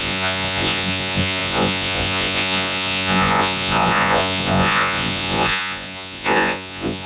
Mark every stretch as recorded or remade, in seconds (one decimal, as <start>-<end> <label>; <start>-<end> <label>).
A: 0.0-7.1 remade